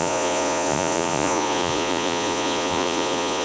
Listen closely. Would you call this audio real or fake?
fake